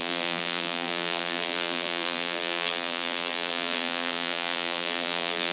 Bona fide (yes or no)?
no